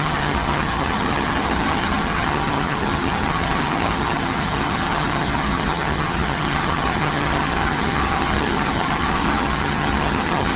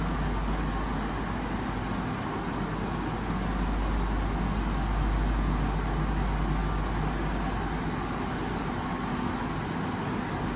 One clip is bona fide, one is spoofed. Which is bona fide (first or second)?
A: second